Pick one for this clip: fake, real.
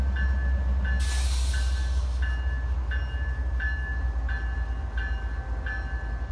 real